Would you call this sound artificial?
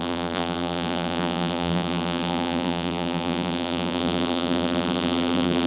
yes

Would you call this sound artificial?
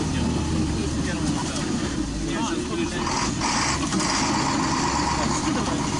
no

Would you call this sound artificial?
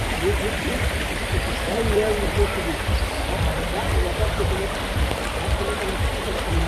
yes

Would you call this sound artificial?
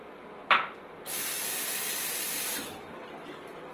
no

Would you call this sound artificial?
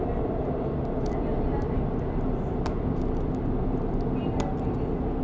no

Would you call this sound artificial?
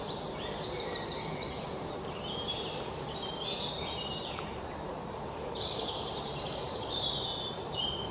yes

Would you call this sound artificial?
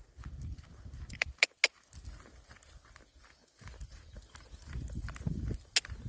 no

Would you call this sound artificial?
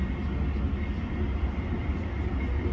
no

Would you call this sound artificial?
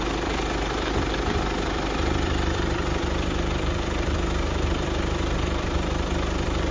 yes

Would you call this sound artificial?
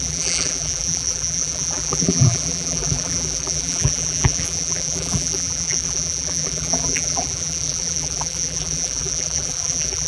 yes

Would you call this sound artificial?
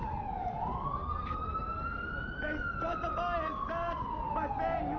no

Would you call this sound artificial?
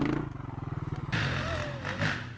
no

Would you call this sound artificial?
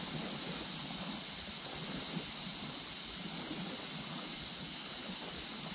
no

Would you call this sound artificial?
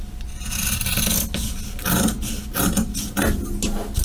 no